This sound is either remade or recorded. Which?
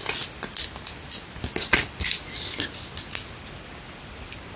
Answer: recorded